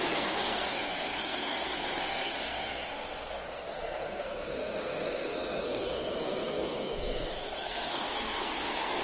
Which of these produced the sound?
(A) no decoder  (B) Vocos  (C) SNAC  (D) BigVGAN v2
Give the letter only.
C